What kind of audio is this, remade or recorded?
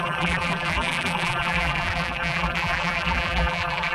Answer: remade